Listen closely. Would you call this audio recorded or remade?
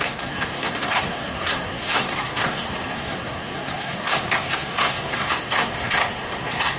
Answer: remade